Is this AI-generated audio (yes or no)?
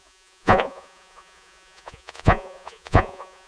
yes